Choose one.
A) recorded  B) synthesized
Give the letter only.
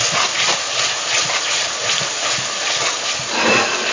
A